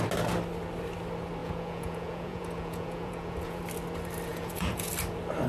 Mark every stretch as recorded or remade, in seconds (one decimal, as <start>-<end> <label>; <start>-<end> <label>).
0.0-1.4 recorded; 1.4-3.6 remade; 3.6-4.3 recorded; 4.3-4.9 remade; 4.9-5.5 recorded